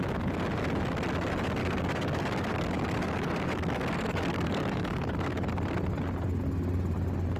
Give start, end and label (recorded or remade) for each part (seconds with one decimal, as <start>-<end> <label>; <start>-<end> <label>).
0.0-1.6 recorded; 1.6-5.5 remade; 5.5-7.4 recorded